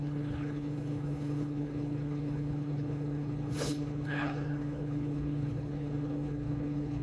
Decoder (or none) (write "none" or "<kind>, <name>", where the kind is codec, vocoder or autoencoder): codec, HILCodec